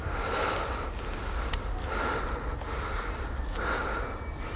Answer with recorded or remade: recorded